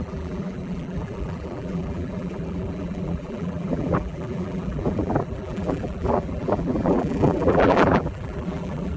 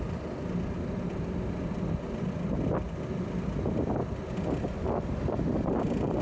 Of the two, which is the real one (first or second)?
second